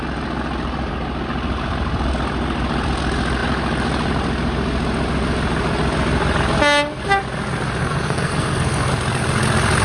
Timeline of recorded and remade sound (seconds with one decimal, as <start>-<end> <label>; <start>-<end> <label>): 0.0-7.8 recorded; 7.8-8.9 remade; 8.9-9.8 recorded